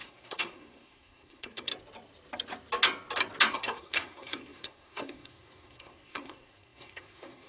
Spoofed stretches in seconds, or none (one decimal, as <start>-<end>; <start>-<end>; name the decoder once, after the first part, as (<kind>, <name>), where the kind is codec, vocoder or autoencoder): 0.0-1.7 (codec, SNAC); 3.5-7.5